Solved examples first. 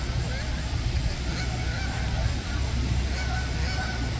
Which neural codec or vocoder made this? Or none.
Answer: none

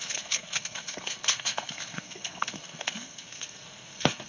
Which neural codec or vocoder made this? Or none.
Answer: codec, SNAC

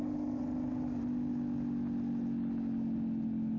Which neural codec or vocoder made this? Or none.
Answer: none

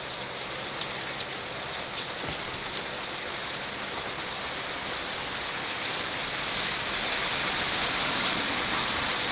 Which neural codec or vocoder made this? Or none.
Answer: none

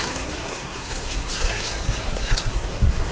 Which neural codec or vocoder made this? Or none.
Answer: codec, SNAC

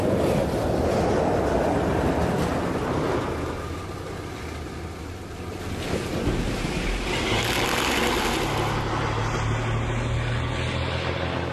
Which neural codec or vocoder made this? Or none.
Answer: none